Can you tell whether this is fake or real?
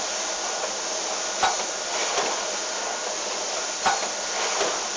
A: real